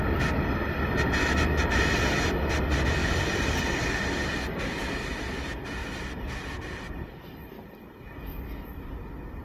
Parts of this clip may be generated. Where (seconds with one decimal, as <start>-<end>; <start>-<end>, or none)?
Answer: 3.0-3.6; 5.8-8.0